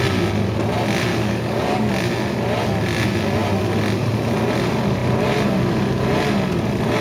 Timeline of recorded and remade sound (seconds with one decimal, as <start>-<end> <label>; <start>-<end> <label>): 0.0-1.1 recorded; 1.1-1.9 remade; 1.9-7.0 recorded